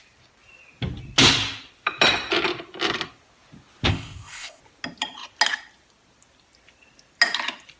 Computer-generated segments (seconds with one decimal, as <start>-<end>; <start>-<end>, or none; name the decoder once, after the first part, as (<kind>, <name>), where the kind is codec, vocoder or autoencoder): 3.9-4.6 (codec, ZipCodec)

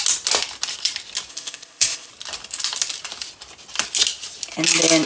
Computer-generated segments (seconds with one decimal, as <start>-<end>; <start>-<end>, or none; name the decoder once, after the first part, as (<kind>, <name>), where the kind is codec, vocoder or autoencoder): 1.3-2.1 (codec, ZipCodec)

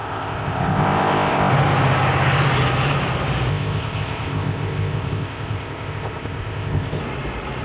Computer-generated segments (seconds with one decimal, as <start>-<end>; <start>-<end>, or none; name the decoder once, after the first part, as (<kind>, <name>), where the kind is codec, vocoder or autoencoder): 0.0-1.5 (codec, ZipCodec); 3.5-7.0

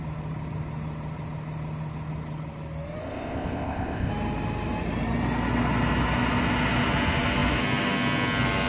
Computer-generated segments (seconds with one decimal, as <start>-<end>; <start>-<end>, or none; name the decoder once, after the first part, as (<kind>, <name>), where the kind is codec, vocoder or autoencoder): 3.0-4.1 (codec, ZipCodec)